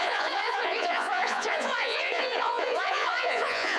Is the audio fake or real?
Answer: fake